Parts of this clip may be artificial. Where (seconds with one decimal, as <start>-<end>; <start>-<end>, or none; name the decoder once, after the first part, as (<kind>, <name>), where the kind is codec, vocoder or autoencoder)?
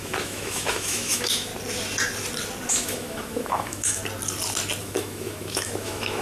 0.0-1.5 (autoencoder, DAC-VAE); 2.7-4.0; 4.8-6.2